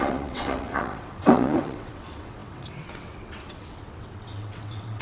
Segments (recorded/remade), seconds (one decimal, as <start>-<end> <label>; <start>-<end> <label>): 0.0-5.0 remade